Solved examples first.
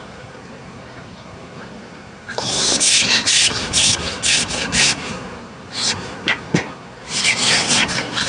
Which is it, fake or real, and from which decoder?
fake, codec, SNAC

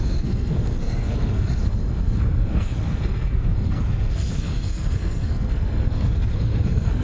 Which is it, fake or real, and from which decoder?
fake, codec, SNAC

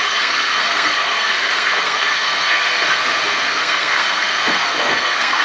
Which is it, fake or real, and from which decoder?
fake, codec, SNAC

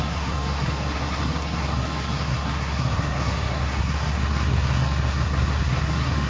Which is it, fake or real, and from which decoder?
fake, codec, SNAC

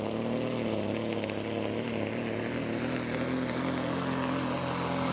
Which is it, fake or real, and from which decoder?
real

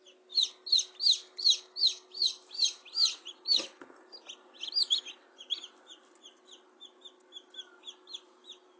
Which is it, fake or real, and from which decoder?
real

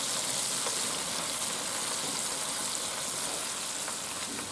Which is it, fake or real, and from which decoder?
real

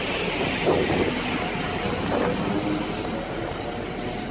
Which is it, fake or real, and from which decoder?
real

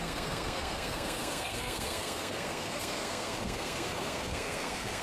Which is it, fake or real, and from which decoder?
fake, codec, SNAC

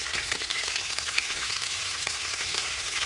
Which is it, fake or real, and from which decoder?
fake, codec, SNAC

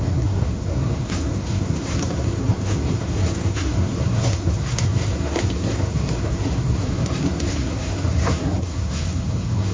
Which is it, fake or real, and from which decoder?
fake, codec, SNAC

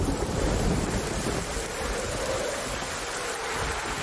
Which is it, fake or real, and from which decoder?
real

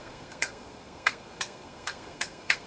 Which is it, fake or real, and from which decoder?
fake, codec, SNAC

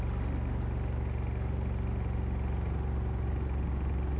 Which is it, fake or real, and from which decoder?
real